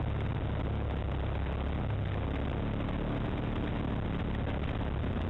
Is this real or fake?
real